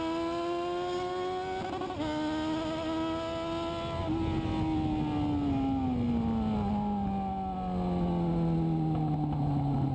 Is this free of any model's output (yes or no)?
yes